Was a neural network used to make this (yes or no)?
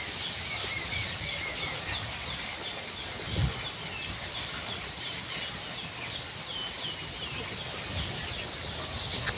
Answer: no